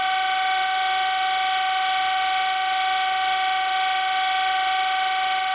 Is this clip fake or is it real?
real